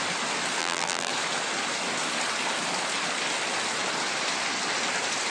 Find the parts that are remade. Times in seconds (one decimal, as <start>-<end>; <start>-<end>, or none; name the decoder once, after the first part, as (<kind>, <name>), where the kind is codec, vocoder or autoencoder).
0.6-1.1 (vocoder, BigVGAN v2)